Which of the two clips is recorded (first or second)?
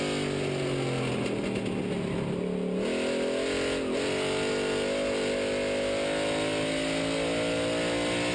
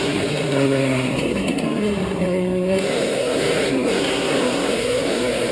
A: first